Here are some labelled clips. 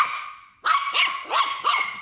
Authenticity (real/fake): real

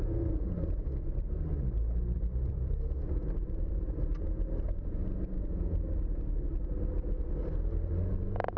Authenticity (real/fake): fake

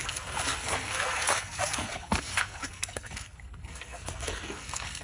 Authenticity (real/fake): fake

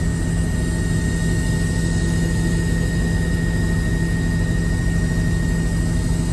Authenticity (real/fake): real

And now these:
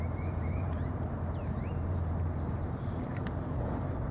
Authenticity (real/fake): fake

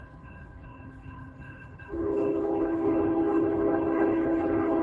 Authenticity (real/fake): fake